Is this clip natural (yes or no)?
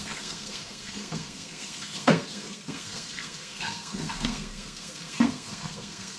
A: no